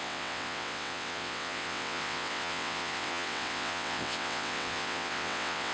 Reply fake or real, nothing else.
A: fake